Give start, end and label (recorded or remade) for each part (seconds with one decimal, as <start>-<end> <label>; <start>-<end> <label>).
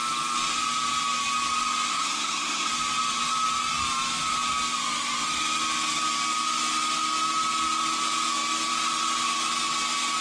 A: 0.0-1.9 recorded; 1.9-2.7 remade; 2.7-10.2 recorded